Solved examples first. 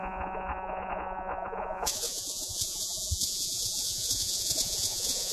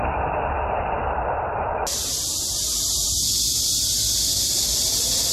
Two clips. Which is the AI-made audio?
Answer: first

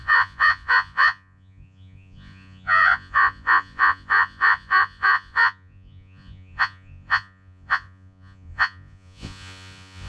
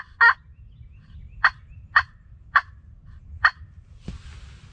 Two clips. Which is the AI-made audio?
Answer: first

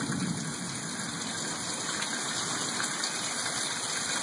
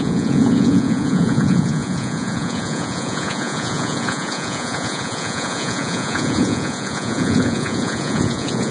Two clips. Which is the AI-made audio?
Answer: second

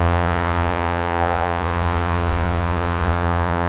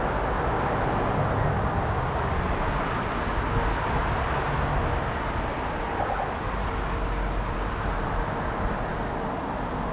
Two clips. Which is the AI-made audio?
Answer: first